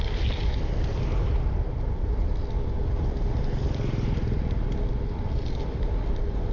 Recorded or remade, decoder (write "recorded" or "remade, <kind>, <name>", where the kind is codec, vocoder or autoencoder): recorded